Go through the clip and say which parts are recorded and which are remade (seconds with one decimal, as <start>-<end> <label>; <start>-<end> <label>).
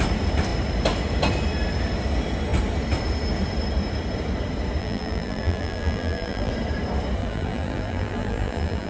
0.0-4.8 recorded; 4.8-6.5 remade; 6.5-7.2 recorded; 7.2-8.9 remade